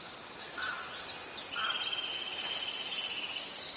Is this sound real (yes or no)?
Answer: yes